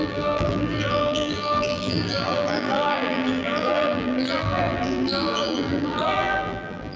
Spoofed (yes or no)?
yes